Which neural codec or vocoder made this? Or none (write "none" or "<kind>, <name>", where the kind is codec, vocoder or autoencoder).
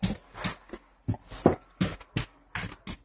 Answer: none